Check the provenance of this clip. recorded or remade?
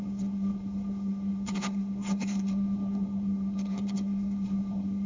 remade